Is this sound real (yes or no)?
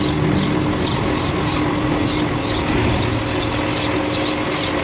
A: yes